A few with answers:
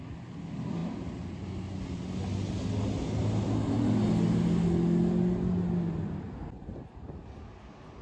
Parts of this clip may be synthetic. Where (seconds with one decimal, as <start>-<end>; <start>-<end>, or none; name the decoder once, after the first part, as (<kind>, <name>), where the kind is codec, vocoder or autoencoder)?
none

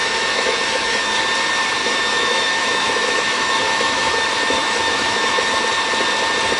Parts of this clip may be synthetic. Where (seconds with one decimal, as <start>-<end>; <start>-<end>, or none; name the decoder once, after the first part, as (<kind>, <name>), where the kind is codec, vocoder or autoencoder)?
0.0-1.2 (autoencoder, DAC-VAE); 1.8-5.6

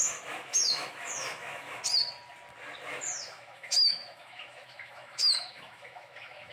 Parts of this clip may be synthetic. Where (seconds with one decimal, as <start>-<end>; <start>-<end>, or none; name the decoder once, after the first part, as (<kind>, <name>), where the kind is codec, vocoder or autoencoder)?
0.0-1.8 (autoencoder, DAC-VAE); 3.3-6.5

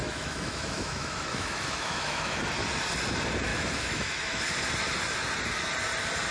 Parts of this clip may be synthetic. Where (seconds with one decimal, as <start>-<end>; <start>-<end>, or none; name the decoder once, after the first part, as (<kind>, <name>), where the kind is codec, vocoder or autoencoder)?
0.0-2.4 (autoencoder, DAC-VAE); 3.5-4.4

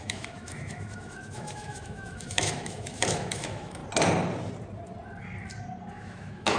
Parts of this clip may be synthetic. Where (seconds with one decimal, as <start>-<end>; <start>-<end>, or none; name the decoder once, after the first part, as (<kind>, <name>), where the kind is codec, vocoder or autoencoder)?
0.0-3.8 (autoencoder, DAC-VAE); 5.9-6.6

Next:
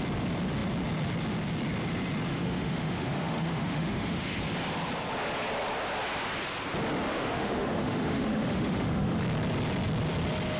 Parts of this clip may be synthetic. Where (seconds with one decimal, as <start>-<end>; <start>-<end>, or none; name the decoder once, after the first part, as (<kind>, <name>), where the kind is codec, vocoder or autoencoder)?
2.3-4.4 (autoencoder, DAC-VAE); 7.1-9.2